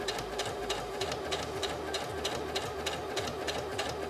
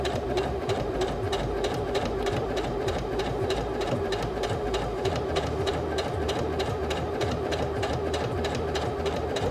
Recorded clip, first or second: first